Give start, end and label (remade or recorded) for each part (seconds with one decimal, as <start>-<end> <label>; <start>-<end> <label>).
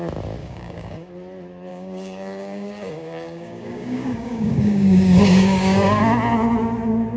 0.0-0.4 recorded; 0.4-1.1 remade; 1.1-1.7 recorded; 1.7-6.0 remade; 6.0-7.2 recorded